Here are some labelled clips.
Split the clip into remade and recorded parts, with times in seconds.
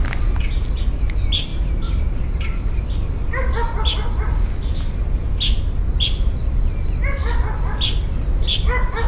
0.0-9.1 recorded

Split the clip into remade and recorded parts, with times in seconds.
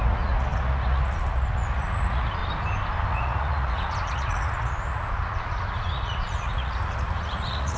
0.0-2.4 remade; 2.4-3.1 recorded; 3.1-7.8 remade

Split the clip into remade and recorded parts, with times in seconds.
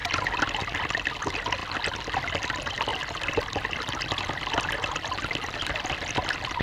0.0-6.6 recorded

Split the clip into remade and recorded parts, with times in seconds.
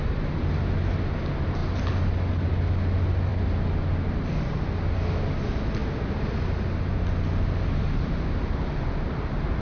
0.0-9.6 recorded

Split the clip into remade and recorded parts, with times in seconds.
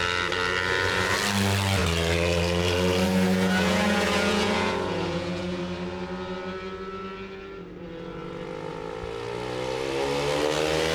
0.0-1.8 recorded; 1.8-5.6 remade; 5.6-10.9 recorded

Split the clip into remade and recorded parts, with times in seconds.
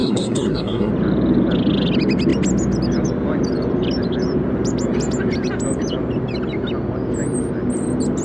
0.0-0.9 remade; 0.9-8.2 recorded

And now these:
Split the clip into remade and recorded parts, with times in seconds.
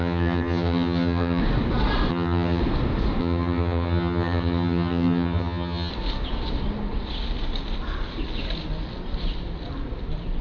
0.0-1.4 remade; 1.4-2.1 recorded; 2.1-2.6 remade; 2.6-3.2 recorded; 3.2-5.9 remade; 5.9-10.4 recorded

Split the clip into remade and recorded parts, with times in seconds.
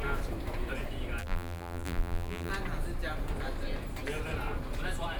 0.0-1.2 recorded; 1.2-2.5 remade; 2.5-5.2 recorded